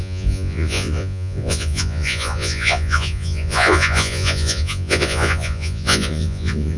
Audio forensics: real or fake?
fake